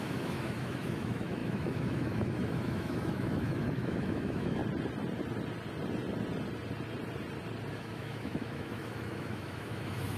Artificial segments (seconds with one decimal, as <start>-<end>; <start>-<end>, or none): 0.0-4.6; 7.7-10.2